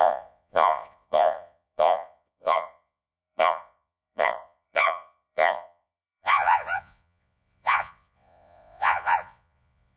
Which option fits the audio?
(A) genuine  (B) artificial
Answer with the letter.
B